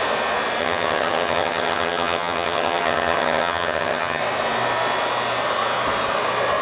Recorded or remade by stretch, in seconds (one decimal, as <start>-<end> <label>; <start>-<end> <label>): 0.0-0.6 recorded; 0.6-4.2 remade; 4.2-6.6 recorded